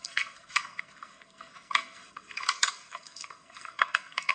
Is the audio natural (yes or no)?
no